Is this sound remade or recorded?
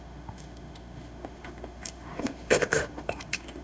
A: remade